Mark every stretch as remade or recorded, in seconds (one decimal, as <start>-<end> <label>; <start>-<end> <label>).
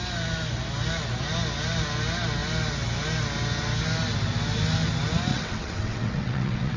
0.0-5.3 recorded; 5.3-6.8 remade